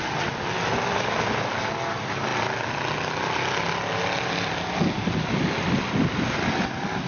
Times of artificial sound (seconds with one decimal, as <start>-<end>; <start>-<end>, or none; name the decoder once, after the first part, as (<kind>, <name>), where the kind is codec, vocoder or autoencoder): none